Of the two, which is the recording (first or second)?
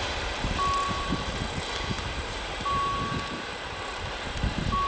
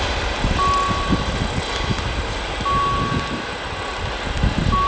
second